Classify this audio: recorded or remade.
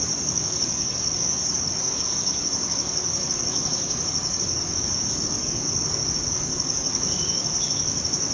remade